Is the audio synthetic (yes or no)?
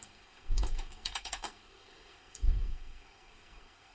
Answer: yes